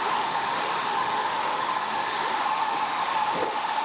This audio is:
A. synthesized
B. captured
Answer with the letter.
A